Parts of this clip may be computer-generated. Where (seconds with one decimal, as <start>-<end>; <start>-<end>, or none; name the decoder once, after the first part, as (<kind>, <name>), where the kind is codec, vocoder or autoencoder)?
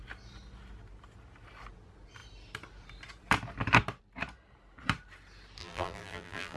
5.6-6.6 (vocoder, BigVGAN v2)